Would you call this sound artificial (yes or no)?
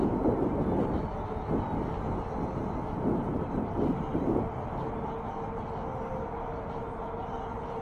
no